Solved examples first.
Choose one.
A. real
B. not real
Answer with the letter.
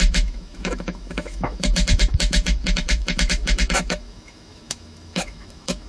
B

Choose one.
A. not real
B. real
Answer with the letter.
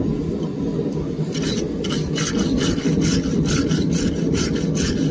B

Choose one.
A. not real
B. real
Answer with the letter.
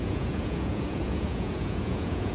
A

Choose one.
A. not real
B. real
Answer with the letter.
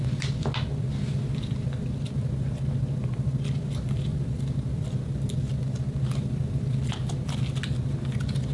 B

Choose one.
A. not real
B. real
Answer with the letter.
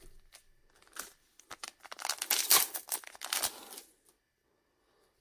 B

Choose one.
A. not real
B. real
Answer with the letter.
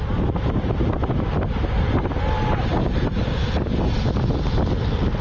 B